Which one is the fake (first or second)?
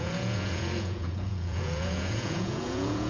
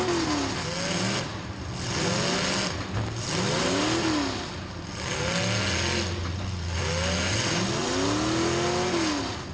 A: first